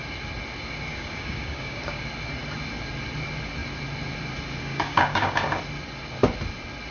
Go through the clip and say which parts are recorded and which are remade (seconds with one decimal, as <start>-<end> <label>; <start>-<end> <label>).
0.0-0.9 recorded; 0.9-2.0 remade; 2.0-4.6 recorded; 4.6-5.6 remade; 5.6-6.9 recorded